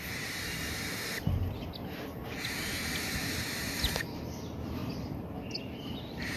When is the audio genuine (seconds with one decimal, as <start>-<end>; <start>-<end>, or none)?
2.2-3.2